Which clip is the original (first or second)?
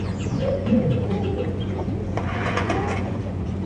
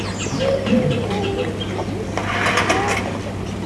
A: second